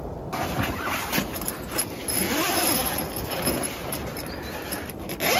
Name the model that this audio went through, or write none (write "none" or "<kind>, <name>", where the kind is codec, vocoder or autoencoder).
none